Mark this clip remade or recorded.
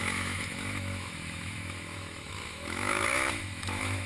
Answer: remade